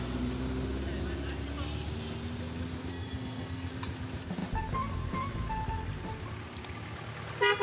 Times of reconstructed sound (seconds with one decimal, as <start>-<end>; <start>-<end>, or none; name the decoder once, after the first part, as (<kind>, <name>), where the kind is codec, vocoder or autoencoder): 2.9-3.7 (codec, SNAC)